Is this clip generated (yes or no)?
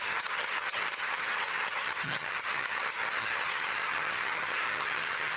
yes